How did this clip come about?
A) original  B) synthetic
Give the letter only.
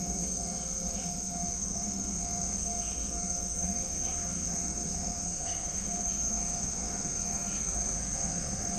B